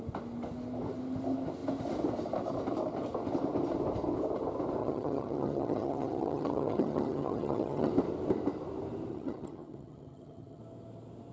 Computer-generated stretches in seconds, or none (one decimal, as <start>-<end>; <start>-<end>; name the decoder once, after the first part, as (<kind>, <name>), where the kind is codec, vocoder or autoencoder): 4.8-7.9 (vocoder, HiFi-GAN); 9.1-10.6